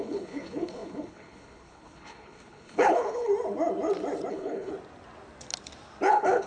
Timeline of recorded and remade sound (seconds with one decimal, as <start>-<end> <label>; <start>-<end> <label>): 0.0-3.3 remade; 3.3-4.3 recorded; 4.3-4.7 remade; 4.7-6.1 recorded; 6.1-6.5 remade